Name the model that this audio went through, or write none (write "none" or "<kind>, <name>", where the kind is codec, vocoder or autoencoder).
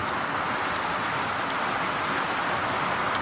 none